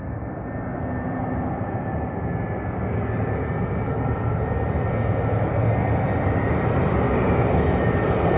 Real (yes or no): yes